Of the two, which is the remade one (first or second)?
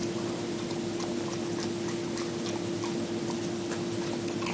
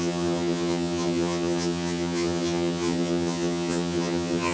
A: second